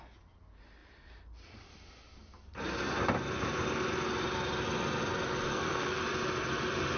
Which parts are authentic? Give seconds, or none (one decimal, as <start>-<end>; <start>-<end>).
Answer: 0.0-5.5; 6.0-7.0

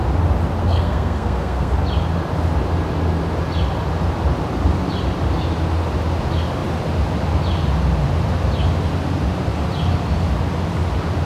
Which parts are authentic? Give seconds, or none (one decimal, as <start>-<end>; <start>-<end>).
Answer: 0.0-0.6; 1.7-11.3

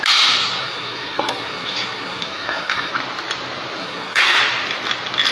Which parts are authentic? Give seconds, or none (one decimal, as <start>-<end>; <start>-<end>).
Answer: 0.0-0.4; 2.9-3.8; 4.4-5.3

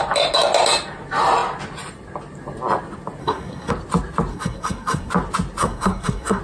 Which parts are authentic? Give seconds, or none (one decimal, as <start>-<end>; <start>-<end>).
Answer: 0.0-3.2; 3.7-4.3; 5.1-5.6

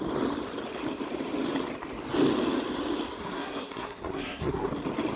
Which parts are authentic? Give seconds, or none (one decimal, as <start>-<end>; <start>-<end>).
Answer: 0.0-3.2; 4.7-5.2

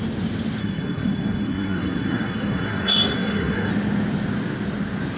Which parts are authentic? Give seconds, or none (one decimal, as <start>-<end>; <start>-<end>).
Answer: 0.0-0.6; 3.7-5.2